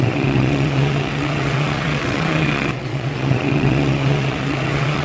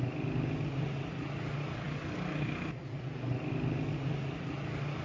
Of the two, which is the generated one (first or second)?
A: first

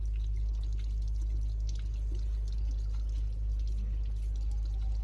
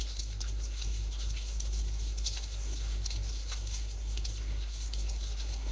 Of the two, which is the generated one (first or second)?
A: second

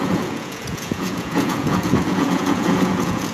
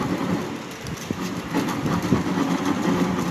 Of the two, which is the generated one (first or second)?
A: first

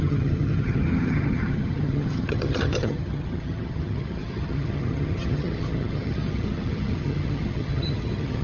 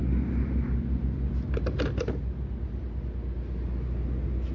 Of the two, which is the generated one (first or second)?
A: first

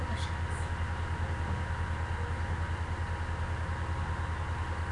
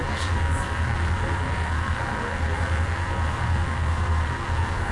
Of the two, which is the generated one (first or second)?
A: second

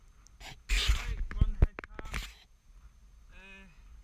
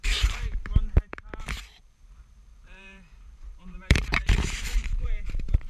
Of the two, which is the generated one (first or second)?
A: second